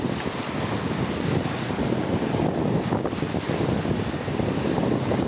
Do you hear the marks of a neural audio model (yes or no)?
no